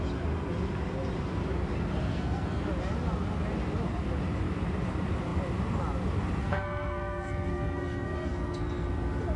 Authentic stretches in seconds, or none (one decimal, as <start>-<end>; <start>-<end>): 0.0-2.1; 2.6-6.4; 8.9-9.4